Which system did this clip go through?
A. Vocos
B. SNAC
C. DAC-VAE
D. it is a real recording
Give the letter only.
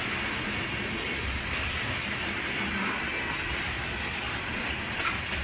D